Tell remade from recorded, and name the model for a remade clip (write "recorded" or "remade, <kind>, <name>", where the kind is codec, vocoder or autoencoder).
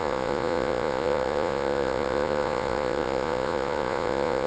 remade, vocoder, Vocos